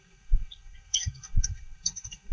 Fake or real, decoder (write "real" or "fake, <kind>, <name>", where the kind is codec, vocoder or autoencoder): fake, codec, SNAC